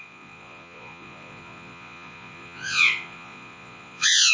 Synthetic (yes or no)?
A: yes